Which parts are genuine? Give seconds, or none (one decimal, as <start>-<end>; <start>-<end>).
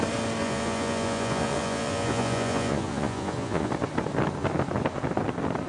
0.0-0.4; 3.7-5.7